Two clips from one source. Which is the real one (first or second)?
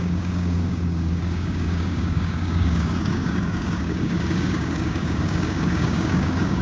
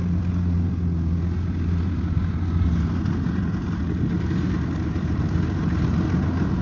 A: second